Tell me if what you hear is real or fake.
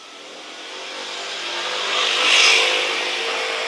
real